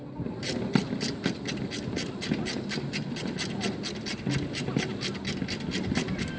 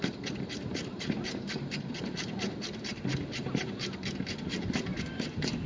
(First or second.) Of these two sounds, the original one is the first